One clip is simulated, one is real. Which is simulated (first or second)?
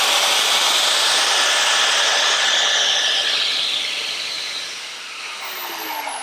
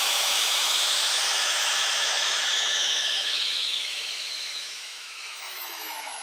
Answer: second